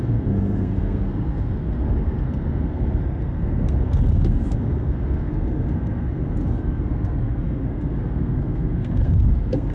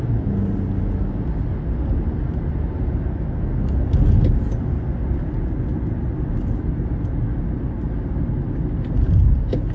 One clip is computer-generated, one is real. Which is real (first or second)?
second